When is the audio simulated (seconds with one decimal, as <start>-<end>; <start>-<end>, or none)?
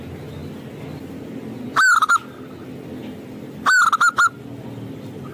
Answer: none